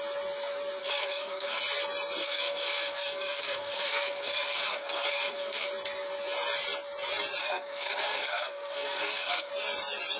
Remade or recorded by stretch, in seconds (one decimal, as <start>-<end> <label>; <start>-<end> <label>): 0.0-0.8 recorded; 0.8-1.6 remade; 1.6-2.2 recorded; 2.2-5.7 remade; 5.7-7.4 recorded; 7.4-9.5 remade; 9.5-10.2 recorded